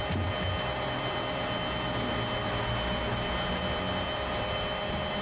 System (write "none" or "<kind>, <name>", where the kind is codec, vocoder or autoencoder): none